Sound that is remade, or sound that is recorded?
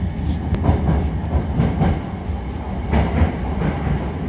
recorded